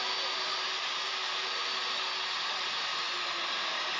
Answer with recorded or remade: recorded